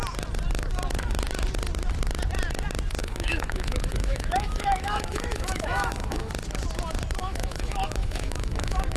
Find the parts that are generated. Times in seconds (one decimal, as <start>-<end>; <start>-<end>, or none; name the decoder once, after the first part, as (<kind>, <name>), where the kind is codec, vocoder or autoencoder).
3.0-6.3 (autoencoder, DAC-VAE); 7.2-9.0